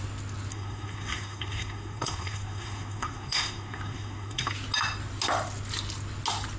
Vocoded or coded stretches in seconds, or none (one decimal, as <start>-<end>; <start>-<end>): 0.5-4.5